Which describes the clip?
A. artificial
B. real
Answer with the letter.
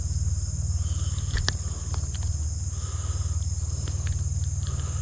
B